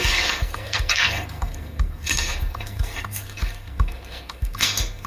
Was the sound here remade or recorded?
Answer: remade